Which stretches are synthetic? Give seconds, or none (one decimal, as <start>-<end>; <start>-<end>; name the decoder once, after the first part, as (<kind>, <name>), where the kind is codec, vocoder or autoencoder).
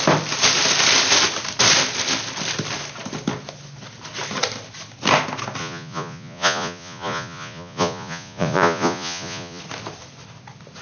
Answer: 5.6-9.6 (vocoder, Vocos)